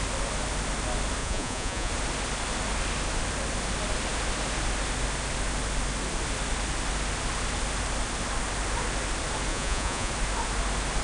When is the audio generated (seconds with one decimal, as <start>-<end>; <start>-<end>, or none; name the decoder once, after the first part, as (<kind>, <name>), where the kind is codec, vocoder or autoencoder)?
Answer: 1.2-1.9 (vocoder, Vocos); 9.5-10.1